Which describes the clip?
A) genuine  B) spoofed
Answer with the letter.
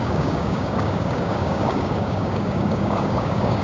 B